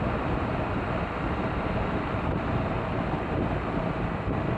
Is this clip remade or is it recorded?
recorded